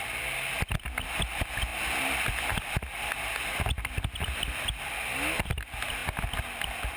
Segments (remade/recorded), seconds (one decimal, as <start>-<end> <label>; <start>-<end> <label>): 0.0-7.0 recorded